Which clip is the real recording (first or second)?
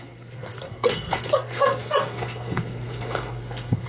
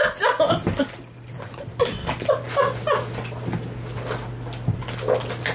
second